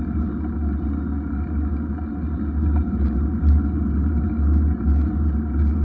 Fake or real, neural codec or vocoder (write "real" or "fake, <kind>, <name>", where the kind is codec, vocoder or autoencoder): real